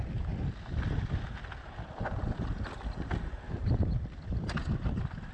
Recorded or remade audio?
recorded